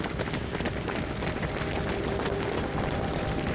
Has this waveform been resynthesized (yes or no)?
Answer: no